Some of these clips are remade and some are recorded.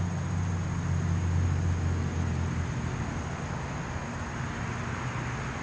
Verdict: recorded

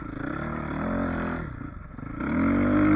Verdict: recorded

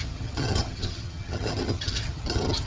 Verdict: remade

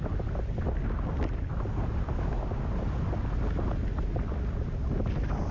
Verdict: recorded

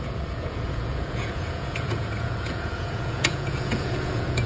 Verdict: remade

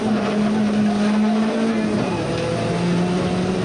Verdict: recorded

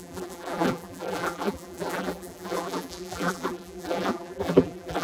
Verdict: remade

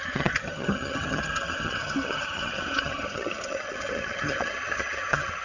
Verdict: remade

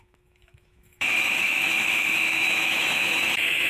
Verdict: remade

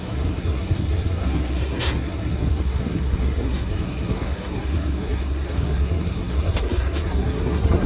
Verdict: remade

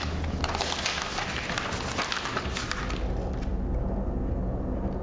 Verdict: recorded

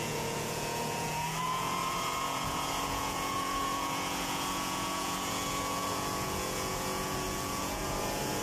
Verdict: remade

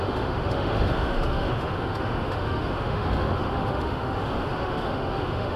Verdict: remade